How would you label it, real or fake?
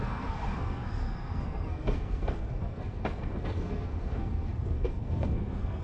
fake